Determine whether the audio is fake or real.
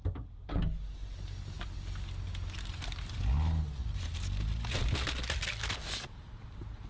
real